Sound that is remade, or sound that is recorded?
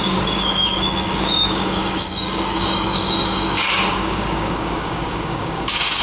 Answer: remade